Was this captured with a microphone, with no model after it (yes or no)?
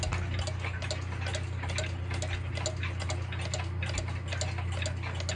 yes